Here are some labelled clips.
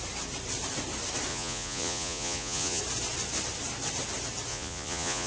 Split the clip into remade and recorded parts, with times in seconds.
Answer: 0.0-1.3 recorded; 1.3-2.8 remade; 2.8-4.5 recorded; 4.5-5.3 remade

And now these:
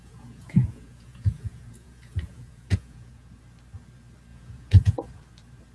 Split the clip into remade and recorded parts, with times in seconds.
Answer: 0.0-3.4 remade; 3.4-4.3 recorded; 4.3-5.1 remade; 5.1-5.7 recorded

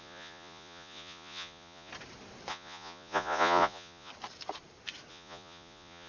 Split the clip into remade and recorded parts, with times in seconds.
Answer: 0.0-1.9 remade; 1.9-2.5 recorded; 2.5-4.1 remade; 4.1-5.1 recorded; 5.1-6.1 remade

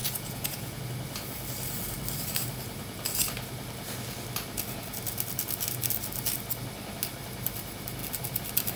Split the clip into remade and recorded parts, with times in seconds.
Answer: 0.0-0.8 remade; 0.8-8.8 recorded

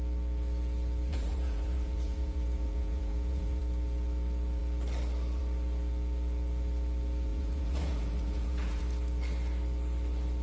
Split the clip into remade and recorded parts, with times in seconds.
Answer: 0.0-1.1 recorded; 1.1-3.6 remade; 3.6-7.3 recorded; 7.3-8.8 remade; 8.8-10.4 recorded

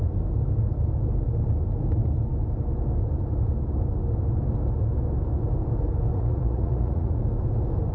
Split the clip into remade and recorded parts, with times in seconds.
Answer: 0.0-6.1 recorded; 6.1-7.2 remade; 7.2-7.9 recorded

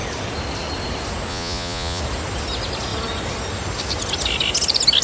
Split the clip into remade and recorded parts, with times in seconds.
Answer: 0.0-1.3 recorded; 1.3-2.0 remade; 2.0-5.0 recorded